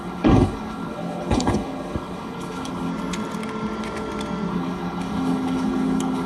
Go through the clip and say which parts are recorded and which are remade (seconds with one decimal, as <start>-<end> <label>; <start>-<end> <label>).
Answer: 0.0-2.9 remade; 2.9-4.5 recorded; 4.5-6.3 remade